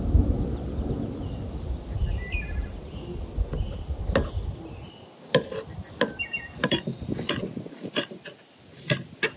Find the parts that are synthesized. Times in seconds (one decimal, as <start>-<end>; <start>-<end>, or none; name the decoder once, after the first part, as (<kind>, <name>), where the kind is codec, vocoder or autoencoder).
none